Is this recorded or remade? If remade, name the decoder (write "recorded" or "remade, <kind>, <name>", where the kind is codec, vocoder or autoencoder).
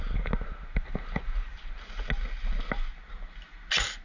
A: recorded